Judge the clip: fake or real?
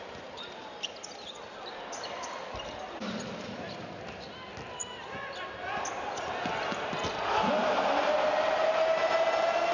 real